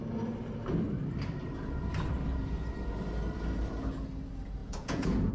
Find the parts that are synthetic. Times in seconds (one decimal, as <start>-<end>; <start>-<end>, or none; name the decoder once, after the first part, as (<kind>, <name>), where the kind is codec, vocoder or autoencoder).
4.6-5.3 (vocoder, Vocos)